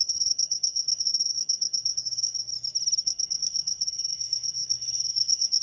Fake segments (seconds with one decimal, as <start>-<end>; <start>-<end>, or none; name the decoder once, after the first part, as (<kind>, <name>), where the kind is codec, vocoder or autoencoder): 0.0-2.5 (codec, SNAC); 3.0-5.6